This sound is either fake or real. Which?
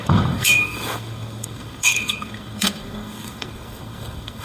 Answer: fake